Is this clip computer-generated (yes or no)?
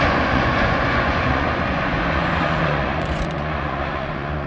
yes